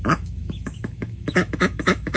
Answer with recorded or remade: remade